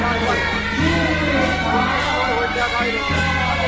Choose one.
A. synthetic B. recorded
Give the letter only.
B